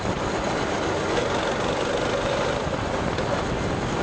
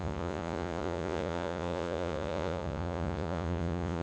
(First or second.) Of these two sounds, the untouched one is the first